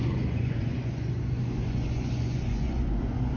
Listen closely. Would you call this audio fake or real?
fake